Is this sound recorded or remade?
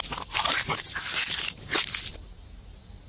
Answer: recorded